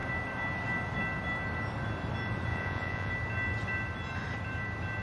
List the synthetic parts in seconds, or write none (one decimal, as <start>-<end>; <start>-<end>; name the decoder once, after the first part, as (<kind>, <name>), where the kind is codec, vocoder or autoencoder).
2.5-3.1 (vocoder, Vocos)